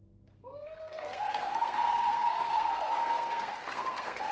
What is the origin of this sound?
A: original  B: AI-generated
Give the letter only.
B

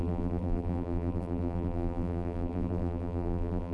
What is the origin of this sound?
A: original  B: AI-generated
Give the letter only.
B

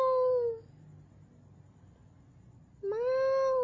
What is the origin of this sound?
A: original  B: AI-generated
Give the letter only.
A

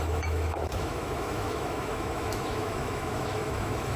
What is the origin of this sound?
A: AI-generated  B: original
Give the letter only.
A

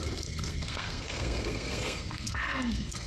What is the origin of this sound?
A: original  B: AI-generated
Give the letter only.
B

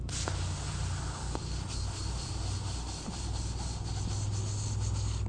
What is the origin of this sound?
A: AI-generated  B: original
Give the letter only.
B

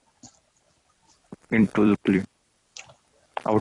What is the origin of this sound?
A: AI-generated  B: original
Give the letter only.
A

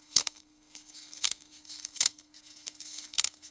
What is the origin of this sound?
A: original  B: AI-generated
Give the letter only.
B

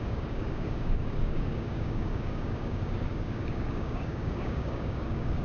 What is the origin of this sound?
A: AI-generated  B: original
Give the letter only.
A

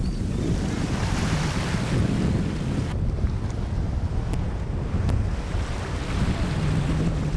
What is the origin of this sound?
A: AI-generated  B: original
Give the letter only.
B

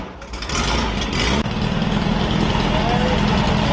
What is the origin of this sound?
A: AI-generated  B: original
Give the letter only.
B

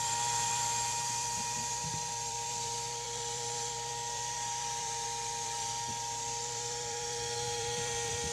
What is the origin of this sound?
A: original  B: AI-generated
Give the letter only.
B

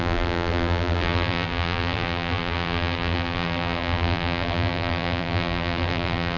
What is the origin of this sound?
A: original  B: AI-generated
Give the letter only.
B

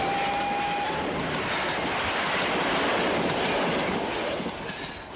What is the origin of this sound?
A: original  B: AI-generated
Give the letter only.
A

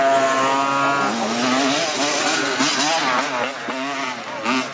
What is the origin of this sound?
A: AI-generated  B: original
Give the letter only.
B